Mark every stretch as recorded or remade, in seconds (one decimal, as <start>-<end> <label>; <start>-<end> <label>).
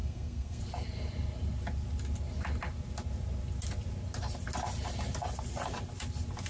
0.0-0.6 remade; 0.6-6.5 recorded